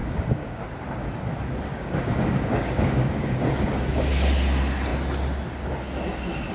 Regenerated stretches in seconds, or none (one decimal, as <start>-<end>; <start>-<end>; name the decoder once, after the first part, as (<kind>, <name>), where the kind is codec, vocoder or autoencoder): 0.0-0.6 (codec, DAC); 1.7-4.0